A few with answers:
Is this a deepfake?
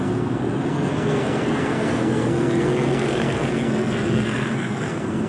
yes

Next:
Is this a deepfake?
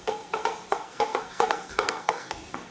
yes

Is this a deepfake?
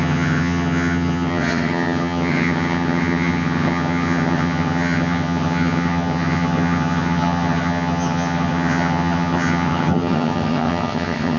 yes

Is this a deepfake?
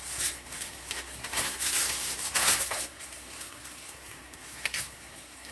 yes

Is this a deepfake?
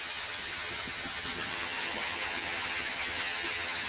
yes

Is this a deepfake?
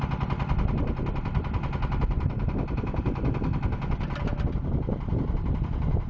no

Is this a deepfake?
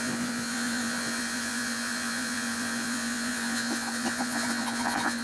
yes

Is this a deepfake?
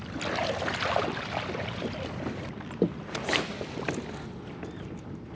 yes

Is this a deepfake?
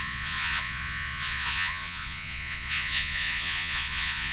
yes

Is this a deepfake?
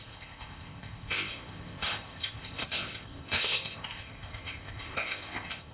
yes